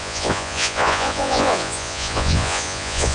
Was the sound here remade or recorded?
remade